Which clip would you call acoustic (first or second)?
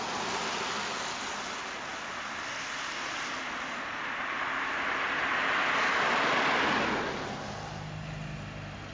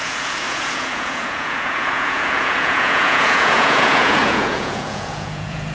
first